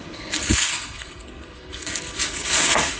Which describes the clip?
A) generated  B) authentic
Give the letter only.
A